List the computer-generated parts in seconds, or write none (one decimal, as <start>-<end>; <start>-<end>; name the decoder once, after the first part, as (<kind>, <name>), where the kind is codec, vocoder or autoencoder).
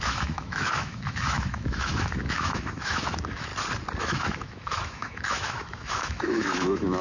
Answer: 0.0-3.5 (autoencoder, DAC-VAE); 4.0-7.0